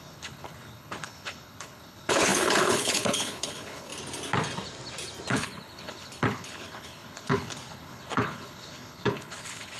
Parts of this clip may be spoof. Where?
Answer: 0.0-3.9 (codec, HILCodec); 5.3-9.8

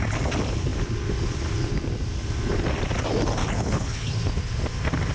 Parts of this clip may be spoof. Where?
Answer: 3.4-4.1 (codec, HILCodec)

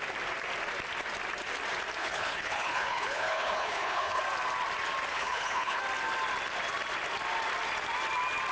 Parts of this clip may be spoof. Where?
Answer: 2.0-4.2 (codec, HILCodec); 5.1-5.8

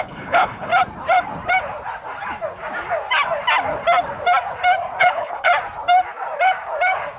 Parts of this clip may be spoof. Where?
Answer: 0.0-0.7 (codec, HILCodec); 5.0-5.5

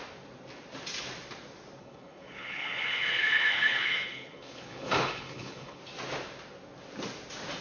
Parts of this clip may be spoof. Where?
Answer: 1.8-5.8 (codec, HILCodec)

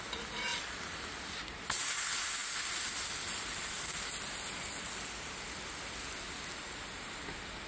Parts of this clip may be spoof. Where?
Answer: none

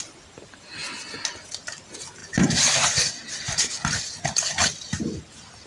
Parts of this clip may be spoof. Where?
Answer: none